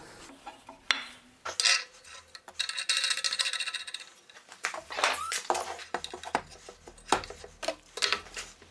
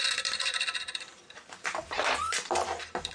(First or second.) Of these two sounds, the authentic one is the first